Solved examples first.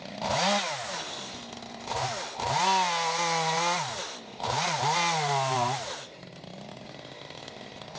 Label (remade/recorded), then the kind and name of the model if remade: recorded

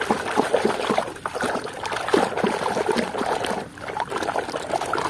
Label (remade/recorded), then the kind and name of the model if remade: recorded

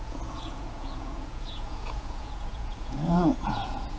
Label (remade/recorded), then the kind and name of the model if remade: remade, vocoder, Vocos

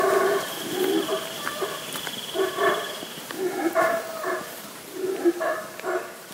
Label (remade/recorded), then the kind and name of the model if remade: remade, vocoder, BigVGAN v2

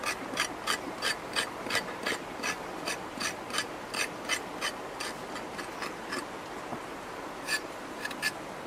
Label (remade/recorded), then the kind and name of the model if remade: recorded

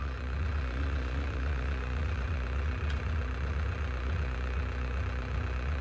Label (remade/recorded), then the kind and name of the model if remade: remade, vocoder, Vocos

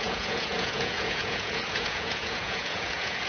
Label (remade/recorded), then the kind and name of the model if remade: remade, vocoder, Vocos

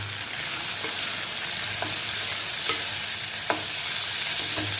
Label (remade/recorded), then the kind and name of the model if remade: recorded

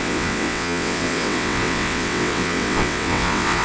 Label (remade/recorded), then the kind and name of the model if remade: remade, vocoder, WaveNeXt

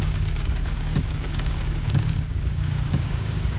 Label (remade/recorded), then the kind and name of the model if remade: remade, codec, DAC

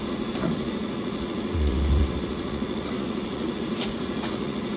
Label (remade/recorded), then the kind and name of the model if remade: remade, vocoder, Vocos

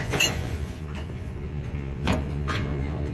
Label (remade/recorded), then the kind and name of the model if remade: remade, vocoder, Vocos